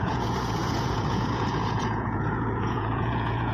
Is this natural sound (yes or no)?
no